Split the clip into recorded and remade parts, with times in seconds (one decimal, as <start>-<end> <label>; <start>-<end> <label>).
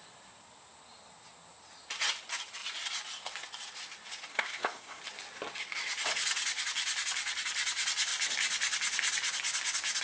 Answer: 0.0-4.3 recorded; 4.3-5.0 remade; 5.0-10.0 recorded